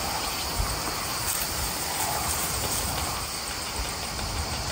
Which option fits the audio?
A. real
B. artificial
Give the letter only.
A